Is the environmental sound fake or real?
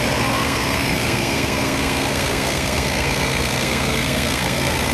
fake